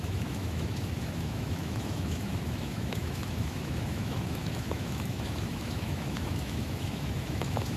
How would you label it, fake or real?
fake